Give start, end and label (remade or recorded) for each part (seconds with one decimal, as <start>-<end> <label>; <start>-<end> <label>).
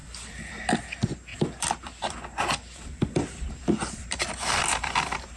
0.0-0.8 remade; 0.8-1.3 recorded; 1.3-3.5 remade; 3.5-5.4 recorded